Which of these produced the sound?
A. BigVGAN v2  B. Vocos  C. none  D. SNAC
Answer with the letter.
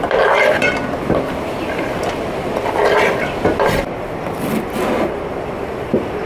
A